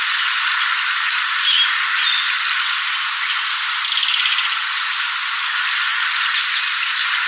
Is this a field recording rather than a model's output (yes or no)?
yes